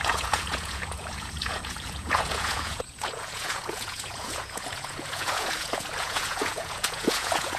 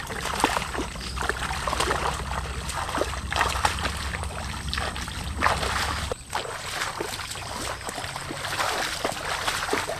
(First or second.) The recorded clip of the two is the second